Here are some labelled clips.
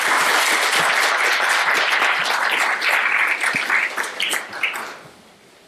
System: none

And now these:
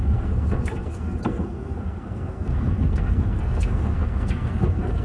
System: codec, SNAC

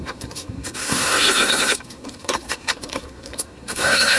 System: codec, SNAC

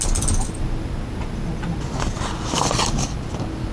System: none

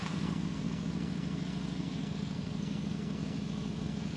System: codec, SNAC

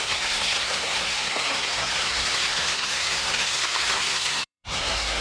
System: codec, SNAC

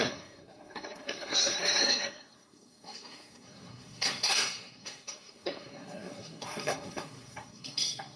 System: codec, SNAC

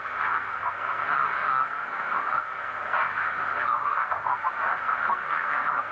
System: codec, SNAC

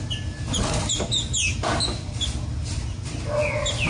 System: none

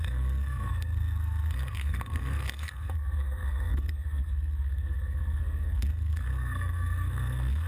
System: codec, SNAC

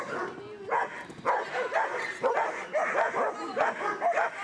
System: none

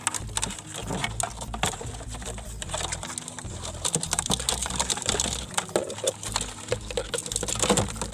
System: none